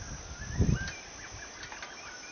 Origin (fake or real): real